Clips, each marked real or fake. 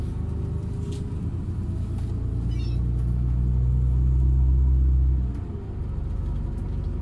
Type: real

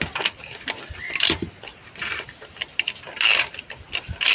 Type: real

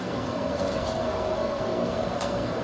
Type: fake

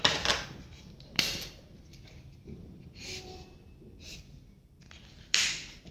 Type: fake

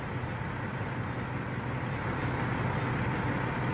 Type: real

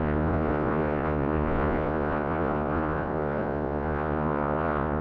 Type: fake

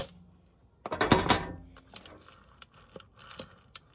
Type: real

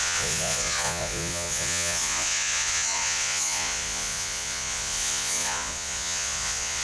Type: fake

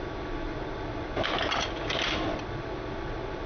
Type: real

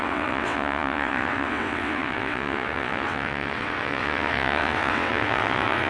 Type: fake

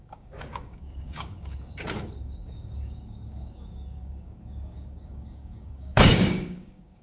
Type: fake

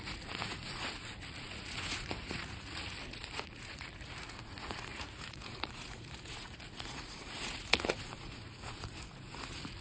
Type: fake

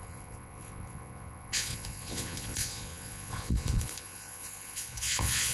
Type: fake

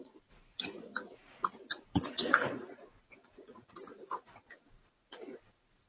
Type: fake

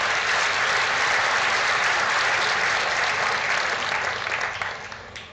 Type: real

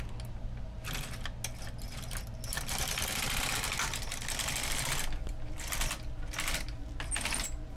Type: real